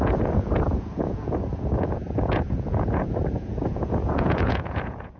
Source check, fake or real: fake